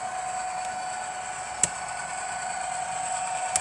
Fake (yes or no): no